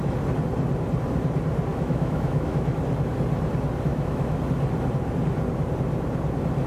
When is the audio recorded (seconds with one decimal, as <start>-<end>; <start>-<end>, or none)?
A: 0.0-1.7; 2.8-3.9; 4.4-6.7